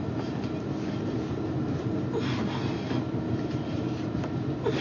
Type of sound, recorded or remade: recorded